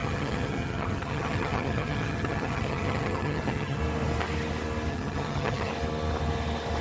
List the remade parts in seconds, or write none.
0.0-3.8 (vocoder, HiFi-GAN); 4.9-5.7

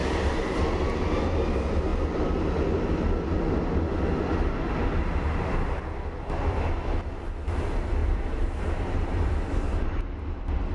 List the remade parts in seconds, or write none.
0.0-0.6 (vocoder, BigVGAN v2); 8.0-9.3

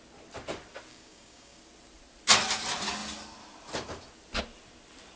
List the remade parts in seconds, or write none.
0.9-1.6 (codec, DAC)

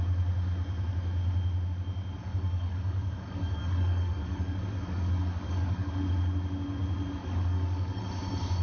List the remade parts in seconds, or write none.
2.2-5.9 (codec, DAC); 7.2-8.0

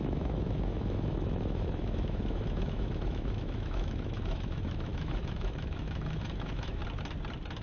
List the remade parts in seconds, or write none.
0.0-6.8 (autoencoder, DAC-VAE)

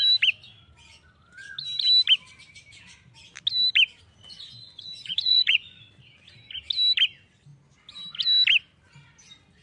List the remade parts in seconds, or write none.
4.2-5.9 (vocoder, Vocos)